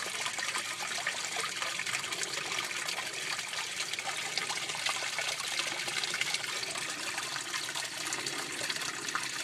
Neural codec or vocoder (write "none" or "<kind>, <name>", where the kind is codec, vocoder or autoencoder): none